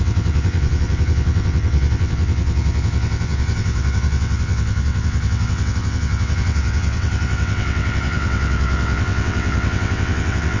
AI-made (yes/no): yes